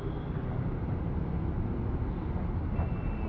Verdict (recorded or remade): recorded